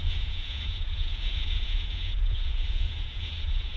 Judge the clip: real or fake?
fake